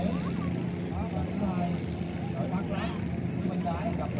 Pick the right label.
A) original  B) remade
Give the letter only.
A